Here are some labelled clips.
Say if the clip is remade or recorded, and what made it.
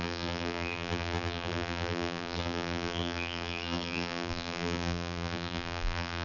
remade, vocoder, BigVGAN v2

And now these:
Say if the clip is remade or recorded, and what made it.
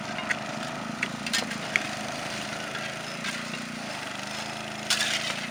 recorded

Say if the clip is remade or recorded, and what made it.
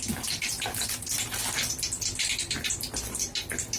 recorded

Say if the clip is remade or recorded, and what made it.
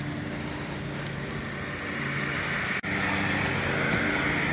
recorded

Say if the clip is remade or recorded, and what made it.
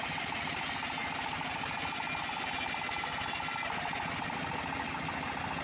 recorded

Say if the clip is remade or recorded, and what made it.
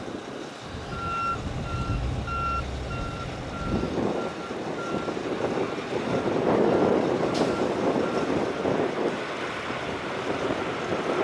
recorded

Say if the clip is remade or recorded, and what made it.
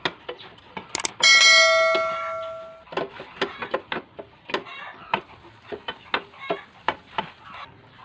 recorded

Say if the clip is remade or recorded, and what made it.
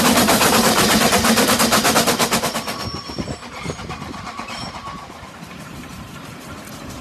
remade, vocoder, BigVGAN v2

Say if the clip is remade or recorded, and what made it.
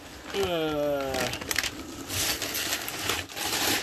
recorded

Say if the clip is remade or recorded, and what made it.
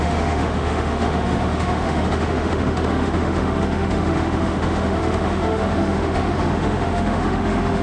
remade, autoencoder, DAC-VAE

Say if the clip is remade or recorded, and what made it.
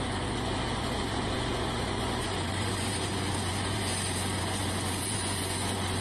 remade, vocoder, Vocos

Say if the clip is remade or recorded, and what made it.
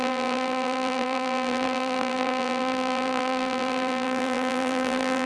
remade, vocoder, BigVGAN v2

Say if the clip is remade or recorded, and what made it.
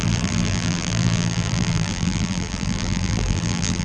remade, vocoder, BigVGAN v2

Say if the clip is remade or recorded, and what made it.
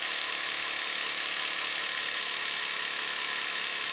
remade, autoencoder, DAC-VAE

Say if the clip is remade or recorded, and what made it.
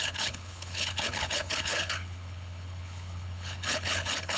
remade, codec, HILCodec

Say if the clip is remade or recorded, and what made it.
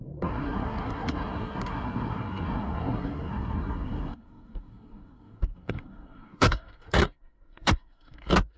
remade, codec, SNAC